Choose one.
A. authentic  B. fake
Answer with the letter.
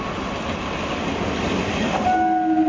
A